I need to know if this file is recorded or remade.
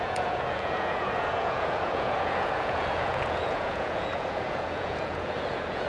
remade